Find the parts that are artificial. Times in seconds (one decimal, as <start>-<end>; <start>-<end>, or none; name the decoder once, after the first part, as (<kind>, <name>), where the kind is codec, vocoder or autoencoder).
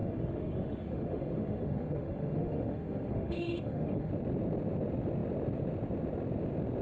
0.0-4.1 (autoencoder, DAC-VAE)